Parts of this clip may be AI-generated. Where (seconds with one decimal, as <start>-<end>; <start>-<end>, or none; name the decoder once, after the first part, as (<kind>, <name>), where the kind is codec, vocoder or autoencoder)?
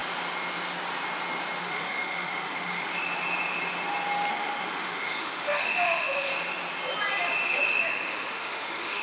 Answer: 1.6-2.9 (autoencoder, DAC-VAE); 4.3-6.3; 7.6-9.0